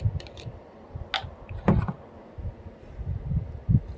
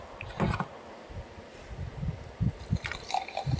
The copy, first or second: second